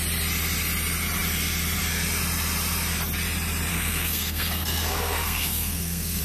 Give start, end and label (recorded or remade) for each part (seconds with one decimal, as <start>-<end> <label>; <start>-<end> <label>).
0.0-3.7 recorded; 3.7-6.2 remade

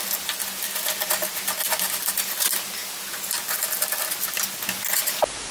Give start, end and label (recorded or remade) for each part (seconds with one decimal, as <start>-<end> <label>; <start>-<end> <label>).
0.0-5.5 recorded

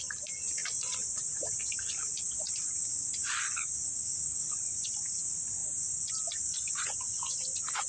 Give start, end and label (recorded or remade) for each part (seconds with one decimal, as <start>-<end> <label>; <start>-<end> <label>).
0.0-0.6 recorded; 0.6-3.9 remade; 3.9-7.9 recorded

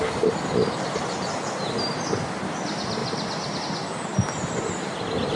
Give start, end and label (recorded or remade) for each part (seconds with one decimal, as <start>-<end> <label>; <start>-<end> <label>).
0.0-5.4 recorded

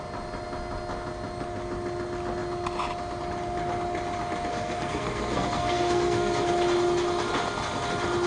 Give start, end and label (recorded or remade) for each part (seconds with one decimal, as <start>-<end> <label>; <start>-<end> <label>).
0.0-4.5 recorded; 4.5-6.5 remade; 6.5-8.3 recorded

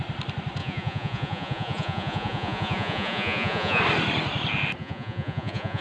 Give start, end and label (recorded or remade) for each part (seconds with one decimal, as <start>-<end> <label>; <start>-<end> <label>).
0.0-0.6 recorded; 0.6-3.8 remade; 3.8-4.8 recorded; 4.8-5.8 remade

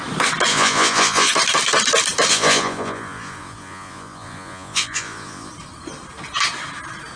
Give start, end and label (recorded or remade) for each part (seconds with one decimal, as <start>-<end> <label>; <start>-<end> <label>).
0.0-0.5 recorded; 0.5-1.3 remade; 1.3-2.3 recorded; 2.3-5.5 remade; 5.5-7.2 recorded